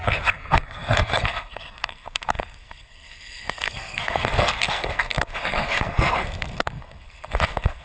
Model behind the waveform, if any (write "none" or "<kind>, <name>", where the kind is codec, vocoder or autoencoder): codec, SNAC